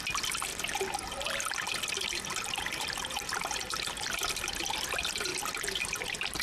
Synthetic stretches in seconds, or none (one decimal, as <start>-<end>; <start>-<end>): 0.5-4.1; 5.3-6.4